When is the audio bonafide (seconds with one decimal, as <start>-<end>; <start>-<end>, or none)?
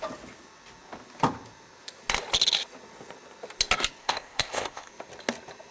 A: 0.0-4.0; 4.9-5.7